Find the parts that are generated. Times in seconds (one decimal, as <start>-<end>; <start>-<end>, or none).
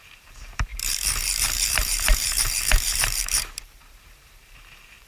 0.0-5.1